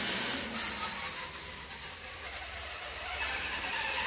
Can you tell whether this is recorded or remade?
recorded